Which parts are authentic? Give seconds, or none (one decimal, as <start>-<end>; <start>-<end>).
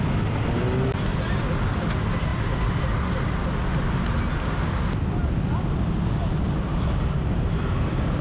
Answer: 0.0-6.2; 7.6-8.2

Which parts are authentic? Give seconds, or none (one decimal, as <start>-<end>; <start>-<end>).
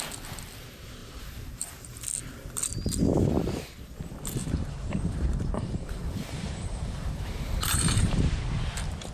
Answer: 0.0-1.0; 1.9-4.4; 8.6-9.1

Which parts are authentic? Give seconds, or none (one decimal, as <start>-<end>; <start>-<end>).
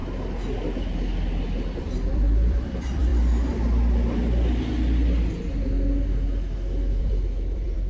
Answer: 0.0-1.8; 3.1-7.0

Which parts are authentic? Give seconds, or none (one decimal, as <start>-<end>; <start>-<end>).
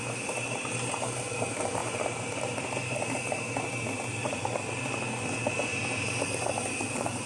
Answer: none